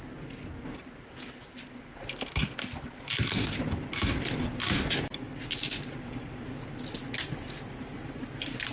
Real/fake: real